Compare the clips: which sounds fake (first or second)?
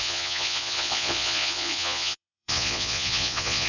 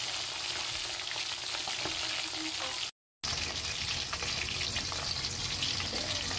first